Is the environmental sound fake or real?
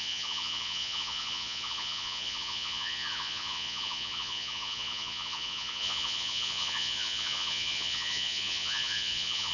fake